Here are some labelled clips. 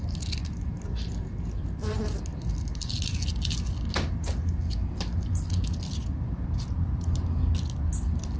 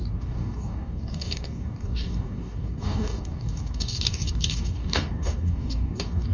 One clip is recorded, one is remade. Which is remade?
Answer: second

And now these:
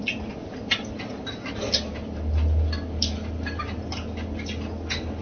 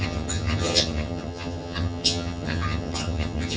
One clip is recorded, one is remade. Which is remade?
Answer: second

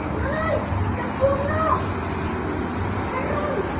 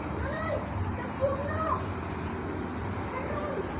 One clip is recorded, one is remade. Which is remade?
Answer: second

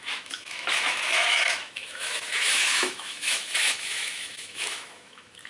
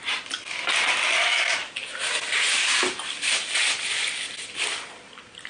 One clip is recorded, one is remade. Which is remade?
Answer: first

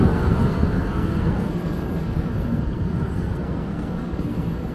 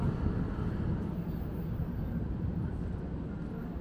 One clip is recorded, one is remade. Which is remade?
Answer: first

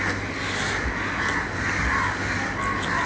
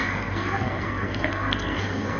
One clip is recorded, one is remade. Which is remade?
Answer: second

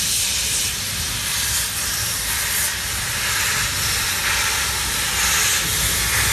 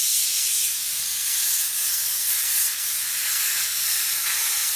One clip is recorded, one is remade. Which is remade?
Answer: second